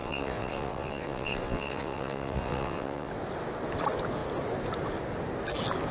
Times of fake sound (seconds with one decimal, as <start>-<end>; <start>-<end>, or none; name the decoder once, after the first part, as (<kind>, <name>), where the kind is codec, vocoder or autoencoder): 0.0-3.1 (vocoder, WaveNeXt)